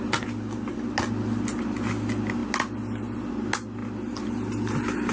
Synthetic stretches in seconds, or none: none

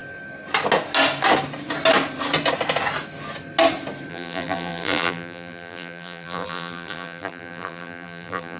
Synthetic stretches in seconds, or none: 4.1-8.6 (vocoder, BigVGAN v2)

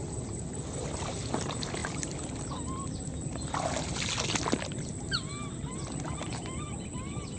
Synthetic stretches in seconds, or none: none

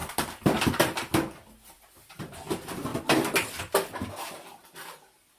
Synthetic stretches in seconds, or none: none

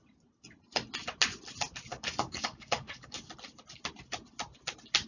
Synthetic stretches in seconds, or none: 1.9-3.3 (codec, DAC)

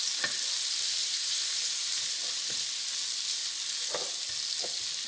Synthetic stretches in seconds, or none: 1.0-2.9 (vocoder, BigVGAN v2)